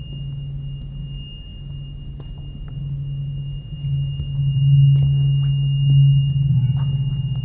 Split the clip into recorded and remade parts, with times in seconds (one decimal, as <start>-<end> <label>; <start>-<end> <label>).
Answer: 0.0-7.4 recorded